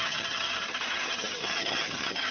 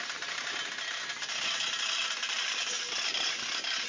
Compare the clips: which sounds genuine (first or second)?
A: second